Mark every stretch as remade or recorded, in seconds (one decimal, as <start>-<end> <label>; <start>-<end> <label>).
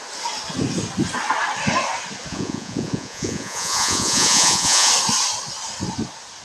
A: 0.0-2.3 recorded; 2.3-4.9 remade; 4.9-6.4 recorded